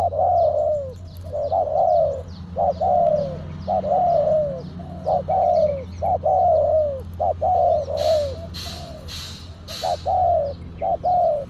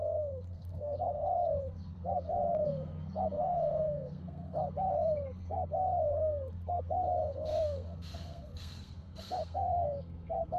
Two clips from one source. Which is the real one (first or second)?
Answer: first